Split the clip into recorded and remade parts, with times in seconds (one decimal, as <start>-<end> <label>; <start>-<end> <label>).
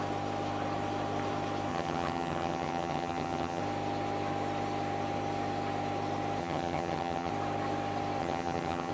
0.0-1.7 recorded; 1.7-3.6 remade; 3.6-6.4 recorded; 6.4-7.3 remade; 7.3-8.2 recorded; 8.2-8.9 remade